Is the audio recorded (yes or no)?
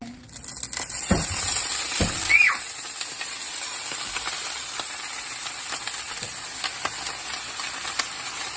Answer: yes